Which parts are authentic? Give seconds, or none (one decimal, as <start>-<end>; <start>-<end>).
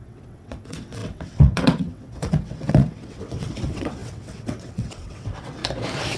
5.6-6.2